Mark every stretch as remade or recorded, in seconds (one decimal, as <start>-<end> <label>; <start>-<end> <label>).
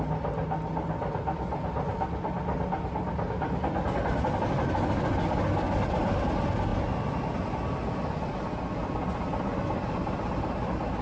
0.0-11.0 recorded